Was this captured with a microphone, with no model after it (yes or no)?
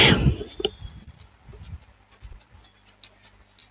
yes